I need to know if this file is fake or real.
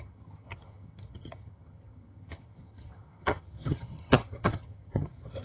fake